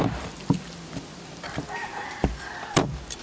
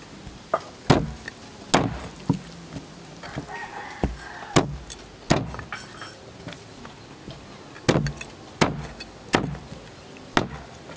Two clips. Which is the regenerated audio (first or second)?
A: first